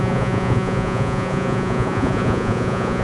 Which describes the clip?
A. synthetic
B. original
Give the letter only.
A